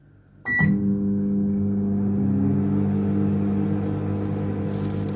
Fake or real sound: real